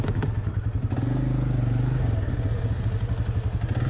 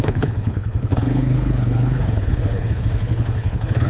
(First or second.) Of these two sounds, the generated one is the second